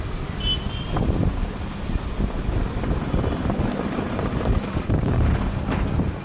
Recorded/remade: recorded